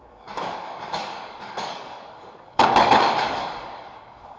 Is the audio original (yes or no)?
no